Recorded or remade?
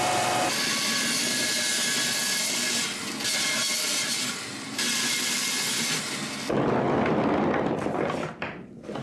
recorded